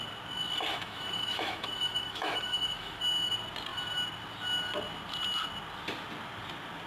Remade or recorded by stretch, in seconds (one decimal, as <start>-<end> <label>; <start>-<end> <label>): 0.0-0.7 recorded; 0.7-3.0 remade; 3.0-6.9 recorded